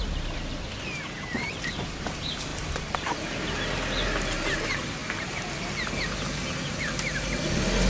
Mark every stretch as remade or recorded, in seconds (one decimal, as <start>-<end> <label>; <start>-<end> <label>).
0.0-7.9 recorded